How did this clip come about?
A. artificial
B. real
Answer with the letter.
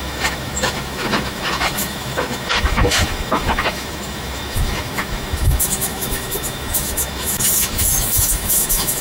A